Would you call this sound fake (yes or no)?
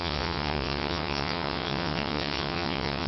yes